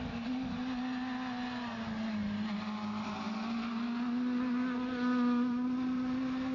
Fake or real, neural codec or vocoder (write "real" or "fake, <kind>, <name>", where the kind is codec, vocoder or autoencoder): real